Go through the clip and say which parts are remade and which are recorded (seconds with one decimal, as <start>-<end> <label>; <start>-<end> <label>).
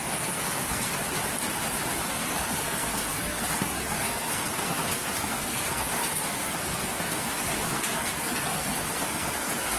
0.0-0.9 remade; 0.9-2.1 recorded; 2.1-9.8 remade